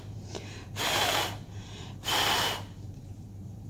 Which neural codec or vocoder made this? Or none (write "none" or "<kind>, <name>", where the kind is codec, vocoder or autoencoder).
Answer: vocoder, BigVGAN v2